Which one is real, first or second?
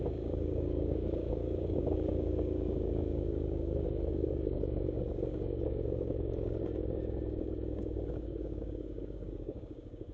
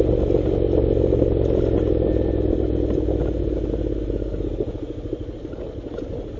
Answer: second